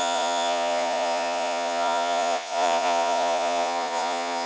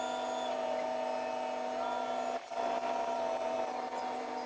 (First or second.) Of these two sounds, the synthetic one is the first